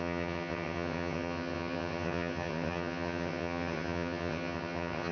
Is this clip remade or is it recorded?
remade